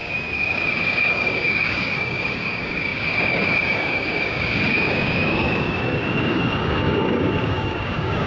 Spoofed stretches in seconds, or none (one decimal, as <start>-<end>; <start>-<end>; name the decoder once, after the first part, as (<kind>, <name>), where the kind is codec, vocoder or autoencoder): 0.0-8.3 (codec, DAC)